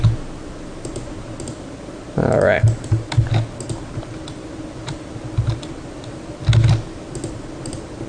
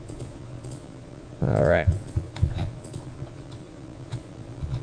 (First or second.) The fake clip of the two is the second